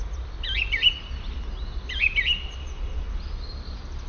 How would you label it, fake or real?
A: real